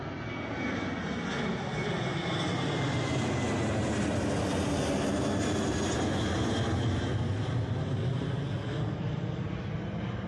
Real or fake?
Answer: real